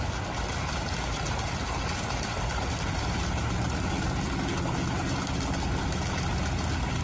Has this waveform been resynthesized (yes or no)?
no